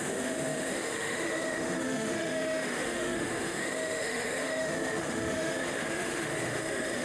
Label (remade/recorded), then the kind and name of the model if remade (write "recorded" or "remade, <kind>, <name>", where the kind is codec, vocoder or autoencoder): remade, autoencoder, DAC-VAE